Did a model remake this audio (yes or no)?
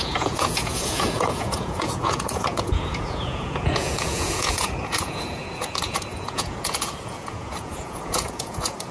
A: yes